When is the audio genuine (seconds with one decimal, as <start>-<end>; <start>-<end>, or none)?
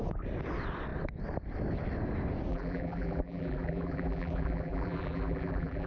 0.0-2.5